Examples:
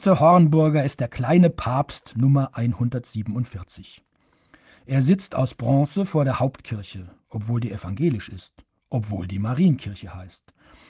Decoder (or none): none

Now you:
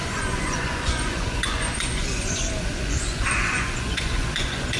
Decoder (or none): vocoder, Vocos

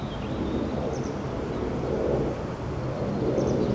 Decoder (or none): none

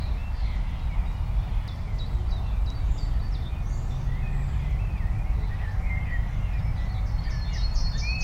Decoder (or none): none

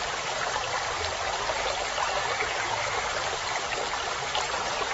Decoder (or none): none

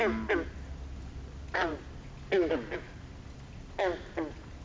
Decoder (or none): none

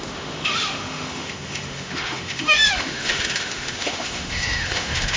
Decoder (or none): autoencoder, DAC-VAE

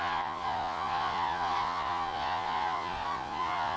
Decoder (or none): vocoder, Vocos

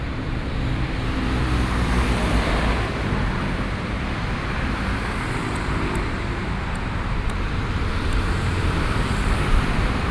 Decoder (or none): vocoder, BigVGAN v2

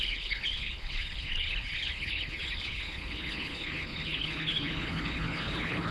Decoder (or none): codec, HILCodec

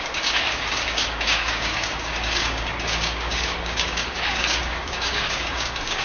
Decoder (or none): codec, DAC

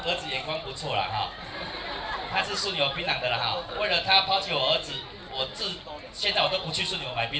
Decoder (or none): none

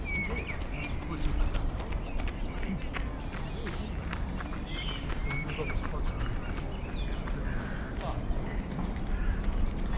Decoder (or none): none